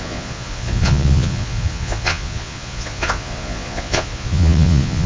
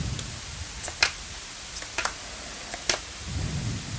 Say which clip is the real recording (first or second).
second